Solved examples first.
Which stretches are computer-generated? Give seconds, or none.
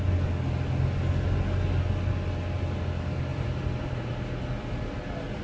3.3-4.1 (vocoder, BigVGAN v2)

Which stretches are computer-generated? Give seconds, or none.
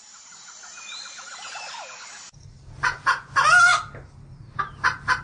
1.3-3.0 (vocoder, BigVGAN v2); 3.7-4.6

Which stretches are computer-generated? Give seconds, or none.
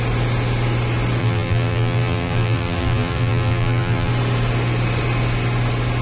1.2-4.1 (vocoder, BigVGAN v2)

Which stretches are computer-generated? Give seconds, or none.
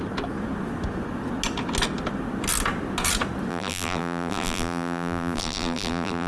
3.5-6.3 (vocoder, BigVGAN v2)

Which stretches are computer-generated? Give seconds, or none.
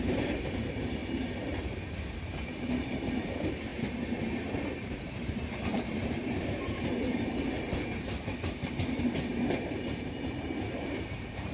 0.0-1.0 (vocoder, BigVGAN v2); 1.7-11.5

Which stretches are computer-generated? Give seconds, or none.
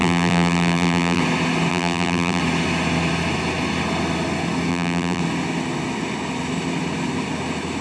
0.0-1.2 (vocoder, BigVGAN v2); 1.7-2.4; 4.7-5.2